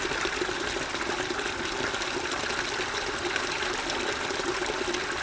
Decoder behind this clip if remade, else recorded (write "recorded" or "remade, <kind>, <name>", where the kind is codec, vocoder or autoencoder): recorded